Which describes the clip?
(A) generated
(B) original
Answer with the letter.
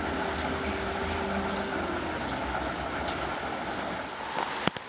B